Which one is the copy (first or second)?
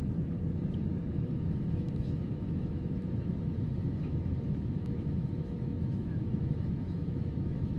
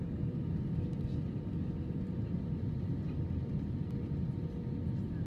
first